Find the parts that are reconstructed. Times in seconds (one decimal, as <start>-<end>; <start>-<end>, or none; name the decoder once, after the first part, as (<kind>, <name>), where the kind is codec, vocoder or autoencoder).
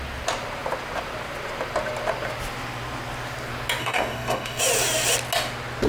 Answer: 3.8-4.6 (codec, DAC)